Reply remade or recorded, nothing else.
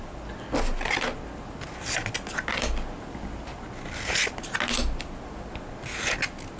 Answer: recorded